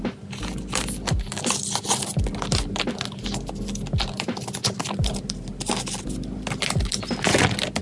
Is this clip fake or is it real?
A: real